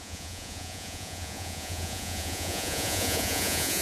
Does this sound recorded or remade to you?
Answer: remade